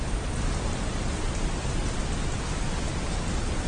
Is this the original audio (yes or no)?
yes